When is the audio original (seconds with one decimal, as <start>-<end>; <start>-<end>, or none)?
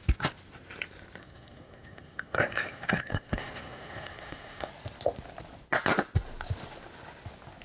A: 0.0-1.2; 4.7-7.6